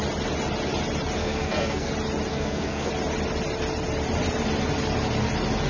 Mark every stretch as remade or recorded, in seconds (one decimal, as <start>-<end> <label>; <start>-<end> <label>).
0.0-1.2 recorded; 1.2-1.9 remade; 1.9-2.3 recorded; 2.3-2.9 remade; 2.9-5.7 recorded